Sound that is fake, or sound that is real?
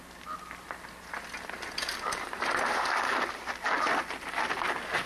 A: real